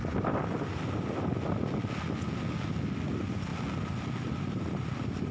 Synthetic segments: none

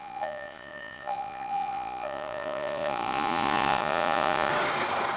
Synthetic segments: 0.0-4.5

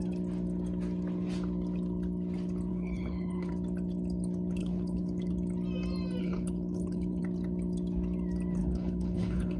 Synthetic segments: 2.7-3.5; 4.6-5.3; 6.2-7.2; 8.6-9.6

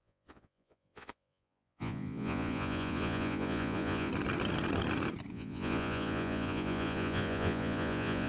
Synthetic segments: 0.0-4.1; 5.3-8.3

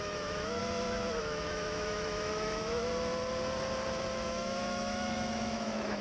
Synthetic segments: 0.0-0.6; 1.2-2.9; 4.1-6.0

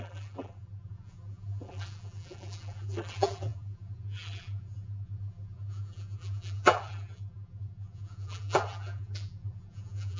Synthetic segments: 0.0-10.2

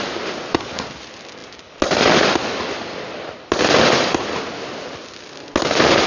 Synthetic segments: none